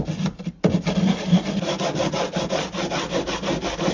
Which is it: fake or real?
real